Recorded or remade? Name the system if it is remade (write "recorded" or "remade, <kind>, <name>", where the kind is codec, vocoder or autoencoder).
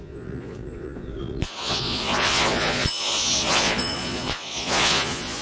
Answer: remade, vocoder, Vocos